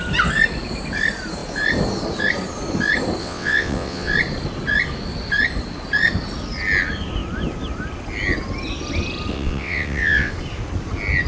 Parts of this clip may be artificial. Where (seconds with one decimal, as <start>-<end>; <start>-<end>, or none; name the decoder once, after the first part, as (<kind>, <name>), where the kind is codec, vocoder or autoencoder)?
3.2-4.1 (vocoder, WaveNeXt); 9.3-10.3